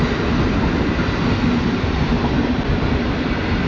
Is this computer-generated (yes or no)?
no